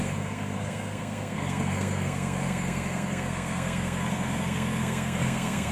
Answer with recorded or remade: remade